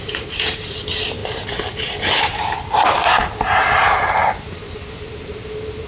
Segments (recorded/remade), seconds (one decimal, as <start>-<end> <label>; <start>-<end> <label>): 0.0-5.9 remade